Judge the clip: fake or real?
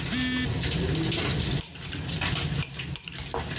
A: real